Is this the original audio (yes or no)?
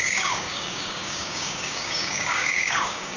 no